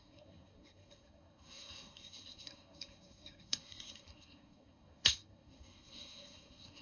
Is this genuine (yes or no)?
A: no